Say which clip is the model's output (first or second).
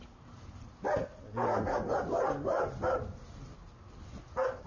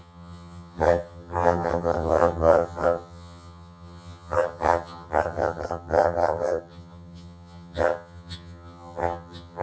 second